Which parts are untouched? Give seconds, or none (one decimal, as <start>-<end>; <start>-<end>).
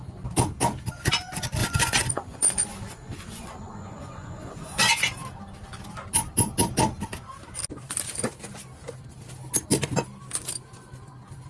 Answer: 0.0-1.6; 4.9-11.5